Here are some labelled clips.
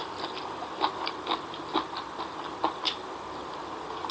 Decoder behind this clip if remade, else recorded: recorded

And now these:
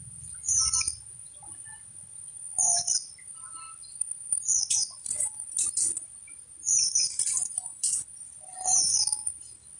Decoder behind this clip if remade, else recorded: recorded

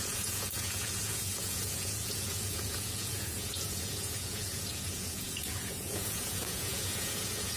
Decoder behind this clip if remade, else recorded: remade, vocoder, Vocos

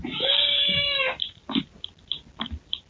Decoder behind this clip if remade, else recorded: recorded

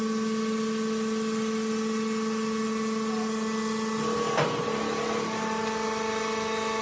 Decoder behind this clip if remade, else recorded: recorded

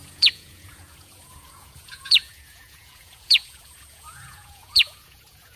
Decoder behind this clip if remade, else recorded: remade, vocoder, Vocos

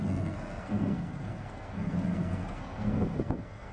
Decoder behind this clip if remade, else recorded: remade, codec, SNAC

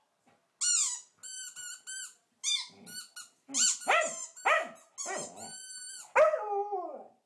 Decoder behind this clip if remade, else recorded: recorded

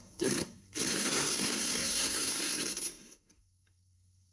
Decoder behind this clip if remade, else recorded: remade, codec, SNAC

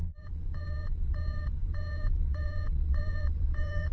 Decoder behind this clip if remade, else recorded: remade, vocoder, Vocos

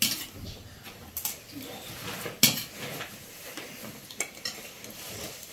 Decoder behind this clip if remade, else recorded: recorded